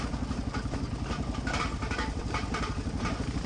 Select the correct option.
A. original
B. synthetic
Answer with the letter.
A